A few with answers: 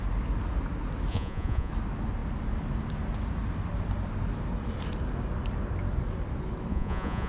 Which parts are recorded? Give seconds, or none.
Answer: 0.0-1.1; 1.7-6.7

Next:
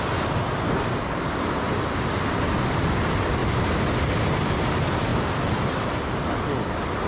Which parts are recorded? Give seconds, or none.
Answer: 0.0-7.1

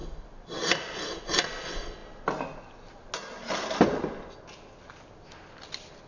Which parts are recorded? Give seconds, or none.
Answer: 0.0-6.1

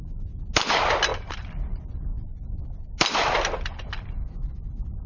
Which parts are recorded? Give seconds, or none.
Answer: 0.0-5.1

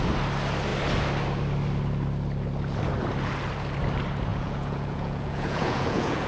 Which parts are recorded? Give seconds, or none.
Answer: 0.0-4.3

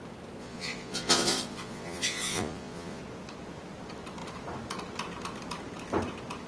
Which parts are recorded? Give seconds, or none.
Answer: 0.0-0.4; 3.0-6.5

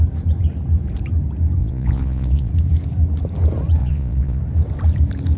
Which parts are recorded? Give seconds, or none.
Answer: 0.0-1.6; 2.5-3.8; 4.4-5.4